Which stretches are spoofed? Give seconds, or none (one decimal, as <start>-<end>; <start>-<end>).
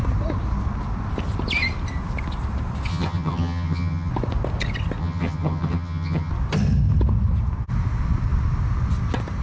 2.9-4.1; 5.0-6.3